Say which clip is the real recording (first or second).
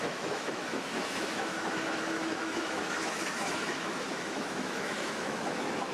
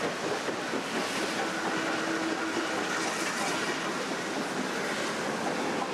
second